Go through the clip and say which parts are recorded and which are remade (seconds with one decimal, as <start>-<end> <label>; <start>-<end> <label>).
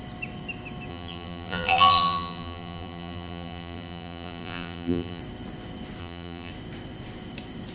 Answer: 0.0-0.9 recorded; 0.9-5.2 remade; 5.2-6.0 recorded; 6.0-6.5 remade; 6.5-7.7 recorded